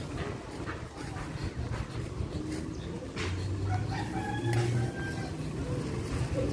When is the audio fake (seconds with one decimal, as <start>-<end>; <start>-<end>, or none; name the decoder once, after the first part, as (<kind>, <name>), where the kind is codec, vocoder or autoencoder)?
none